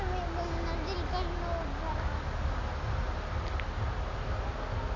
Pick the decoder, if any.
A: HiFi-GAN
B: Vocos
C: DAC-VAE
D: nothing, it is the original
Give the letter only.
D